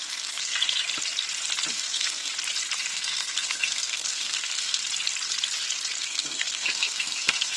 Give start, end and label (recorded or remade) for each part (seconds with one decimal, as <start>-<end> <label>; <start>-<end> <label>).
0.0-0.5 remade; 0.5-1.7 recorded; 1.7-2.3 remade; 2.3-2.9 recorded; 2.9-4.8 remade; 4.8-6.0 recorded; 6.0-7.6 remade